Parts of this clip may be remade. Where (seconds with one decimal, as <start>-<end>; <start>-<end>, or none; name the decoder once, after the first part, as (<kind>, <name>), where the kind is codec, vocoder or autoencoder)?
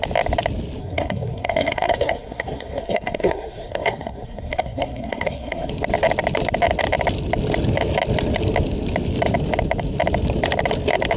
0.8-5.7 (codec, SNAC)